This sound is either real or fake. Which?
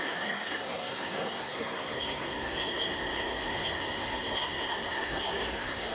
fake